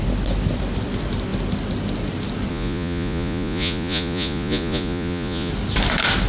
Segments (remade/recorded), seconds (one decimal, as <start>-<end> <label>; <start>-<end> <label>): 0.0-2.5 recorded; 2.5-5.5 remade; 5.5-6.3 recorded